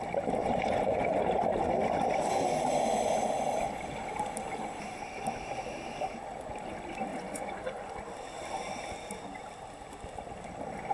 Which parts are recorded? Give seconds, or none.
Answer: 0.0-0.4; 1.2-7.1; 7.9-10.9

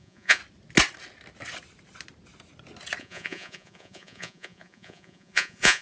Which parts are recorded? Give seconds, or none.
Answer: 0.4-3.0

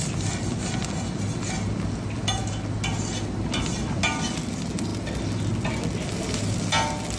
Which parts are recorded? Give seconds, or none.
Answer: 0.0-7.2

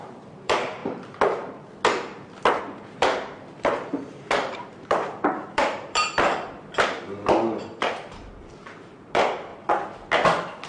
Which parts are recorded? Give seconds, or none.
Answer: 0.8-2.6; 6.3-8.1; 9.5-10.7

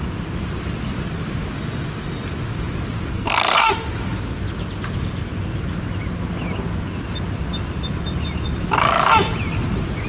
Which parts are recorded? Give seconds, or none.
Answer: 0.0-3.1; 3.7-10.1

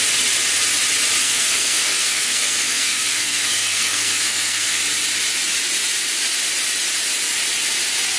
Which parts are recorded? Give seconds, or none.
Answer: 0.0-1.2; 4.8-8.2

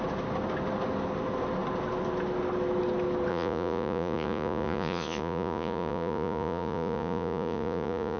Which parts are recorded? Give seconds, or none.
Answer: 0.0-3.3

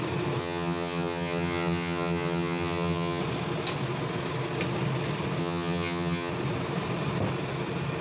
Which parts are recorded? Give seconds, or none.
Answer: 0.0-0.4; 3.2-5.4; 6.3-8.0